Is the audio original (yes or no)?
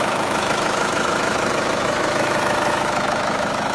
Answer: no